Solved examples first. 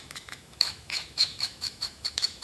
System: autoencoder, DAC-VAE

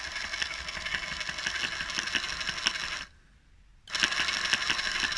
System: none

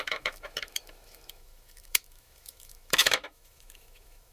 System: autoencoder, DAC-VAE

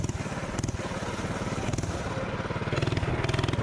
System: none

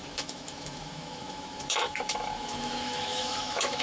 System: autoencoder, DAC-VAE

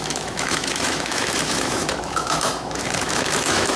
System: autoencoder, DAC-VAE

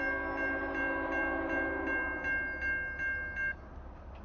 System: none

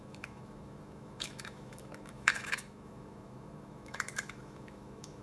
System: autoencoder, DAC-VAE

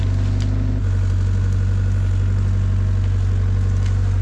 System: none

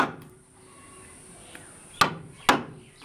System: none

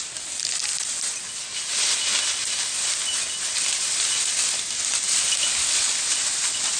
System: none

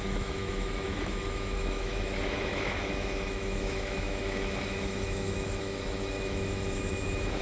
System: autoencoder, DAC-VAE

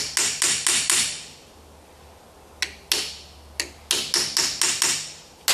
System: none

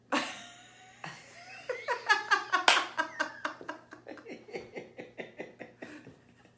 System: none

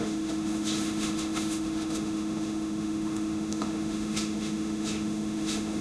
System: autoencoder, DAC-VAE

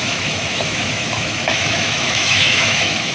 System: autoencoder, DAC-VAE